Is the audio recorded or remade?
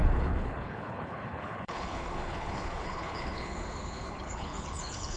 remade